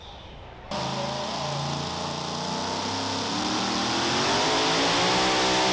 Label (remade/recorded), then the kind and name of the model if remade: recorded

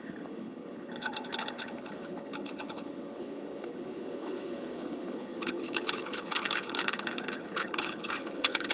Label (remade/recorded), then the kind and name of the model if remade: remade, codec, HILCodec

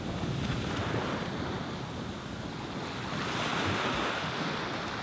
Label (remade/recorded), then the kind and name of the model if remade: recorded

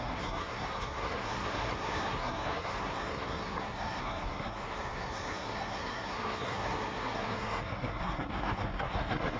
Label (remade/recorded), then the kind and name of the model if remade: remade, codec, SNAC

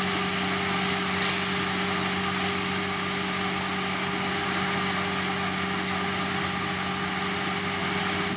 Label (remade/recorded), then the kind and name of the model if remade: recorded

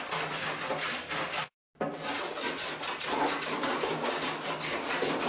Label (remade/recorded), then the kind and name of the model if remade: recorded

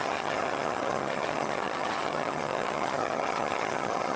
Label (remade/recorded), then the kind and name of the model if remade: remade, vocoder, HiFi-GAN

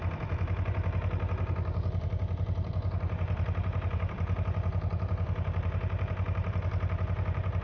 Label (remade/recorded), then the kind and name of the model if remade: remade, vocoder, BigVGAN v2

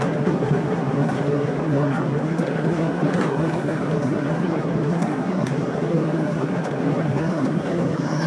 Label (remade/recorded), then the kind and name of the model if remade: remade, codec, SNAC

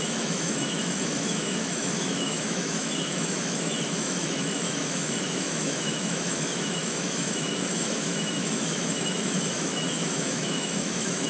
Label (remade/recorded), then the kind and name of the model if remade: remade, autoencoder, DAC-VAE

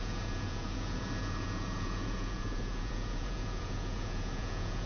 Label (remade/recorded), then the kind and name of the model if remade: remade, vocoder, Vocos